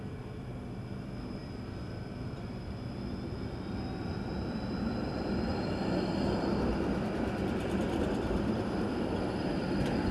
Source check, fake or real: fake